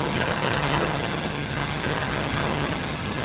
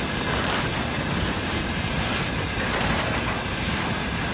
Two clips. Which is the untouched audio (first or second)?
second